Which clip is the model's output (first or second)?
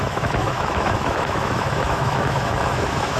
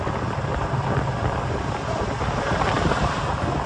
first